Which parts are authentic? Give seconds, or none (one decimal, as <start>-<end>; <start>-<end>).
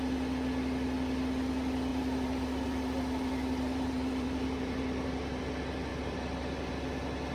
0.0-1.9; 5.4-5.9; 6.7-7.3